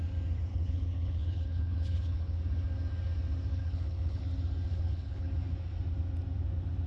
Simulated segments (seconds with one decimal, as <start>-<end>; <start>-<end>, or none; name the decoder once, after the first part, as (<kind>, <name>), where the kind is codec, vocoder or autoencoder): 0.5-2.4 (codec, HILCodec); 3.5-4.2; 4.7-5.3

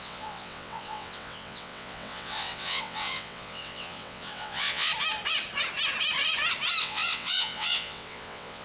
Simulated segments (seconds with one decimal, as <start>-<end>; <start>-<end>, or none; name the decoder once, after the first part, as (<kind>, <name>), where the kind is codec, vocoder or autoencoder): 0.0-4.9 (vocoder, WaveNeXt); 6.8-8.6

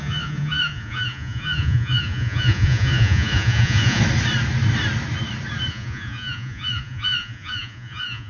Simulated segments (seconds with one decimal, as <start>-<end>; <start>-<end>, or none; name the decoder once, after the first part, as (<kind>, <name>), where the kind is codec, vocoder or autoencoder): 0.0-4.0 (vocoder, Vocos); 5.7-8.3